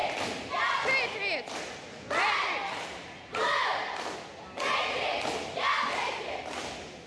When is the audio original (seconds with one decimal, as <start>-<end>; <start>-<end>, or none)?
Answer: 0.0-7.1